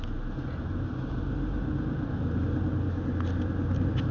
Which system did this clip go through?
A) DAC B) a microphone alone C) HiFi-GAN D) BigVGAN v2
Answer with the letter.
B